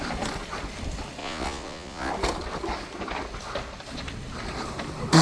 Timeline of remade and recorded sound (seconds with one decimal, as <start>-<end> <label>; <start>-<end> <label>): 0.0-1.2 recorded; 1.2-2.1 remade; 2.1-5.2 recorded